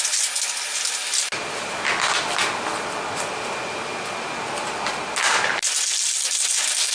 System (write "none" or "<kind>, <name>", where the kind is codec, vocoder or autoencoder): none